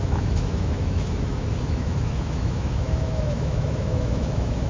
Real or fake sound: fake